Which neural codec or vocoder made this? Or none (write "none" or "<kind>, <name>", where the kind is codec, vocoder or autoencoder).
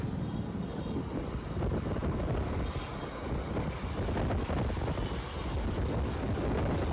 none